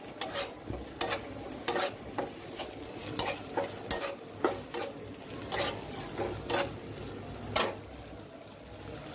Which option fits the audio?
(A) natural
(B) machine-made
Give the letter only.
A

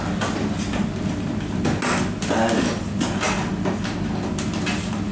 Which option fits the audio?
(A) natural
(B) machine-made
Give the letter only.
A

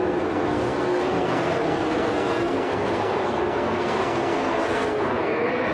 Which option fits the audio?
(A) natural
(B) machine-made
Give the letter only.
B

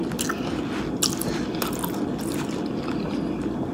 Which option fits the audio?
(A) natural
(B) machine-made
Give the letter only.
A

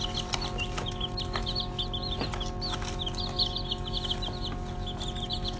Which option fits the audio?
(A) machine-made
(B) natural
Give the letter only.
B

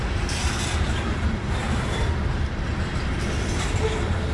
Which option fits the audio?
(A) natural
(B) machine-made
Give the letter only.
B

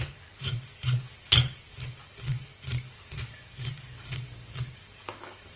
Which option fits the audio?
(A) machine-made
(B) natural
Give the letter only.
A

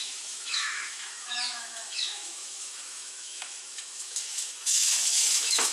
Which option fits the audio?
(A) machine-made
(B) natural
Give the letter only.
A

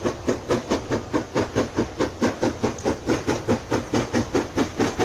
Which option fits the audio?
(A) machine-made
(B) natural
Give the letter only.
B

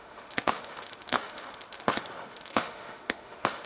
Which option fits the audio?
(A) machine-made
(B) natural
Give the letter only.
A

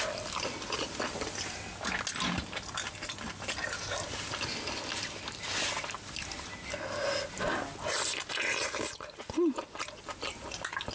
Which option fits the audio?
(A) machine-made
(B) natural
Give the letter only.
B